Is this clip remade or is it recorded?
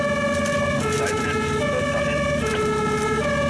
recorded